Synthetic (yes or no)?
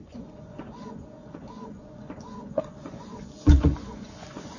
yes